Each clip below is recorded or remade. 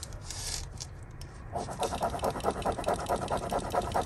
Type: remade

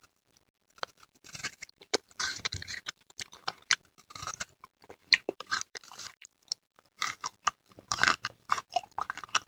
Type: remade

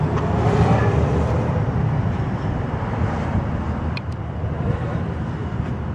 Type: remade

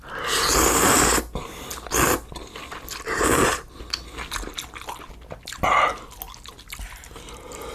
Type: recorded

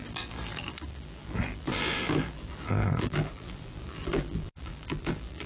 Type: remade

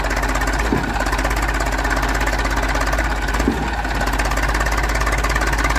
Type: recorded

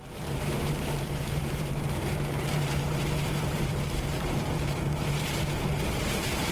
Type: remade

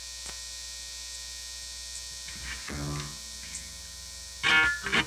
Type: recorded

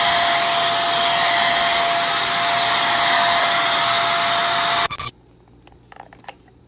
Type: recorded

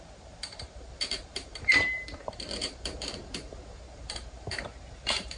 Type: remade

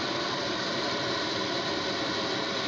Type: remade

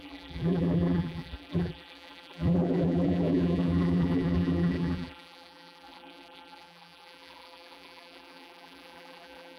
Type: remade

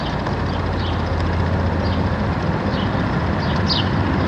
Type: recorded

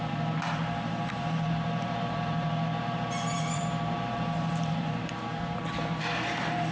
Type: remade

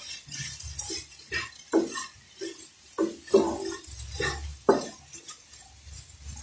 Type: recorded